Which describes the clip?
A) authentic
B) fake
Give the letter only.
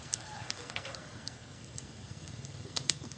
B